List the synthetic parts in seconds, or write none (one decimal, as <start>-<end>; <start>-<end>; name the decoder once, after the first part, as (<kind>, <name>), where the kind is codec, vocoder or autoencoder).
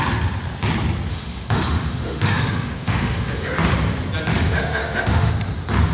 1.1-3.7 (autoencoder, DAC-VAE); 4.3-5.3